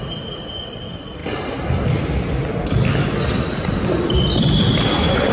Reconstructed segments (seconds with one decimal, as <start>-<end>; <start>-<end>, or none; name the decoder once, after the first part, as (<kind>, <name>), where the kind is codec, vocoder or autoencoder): none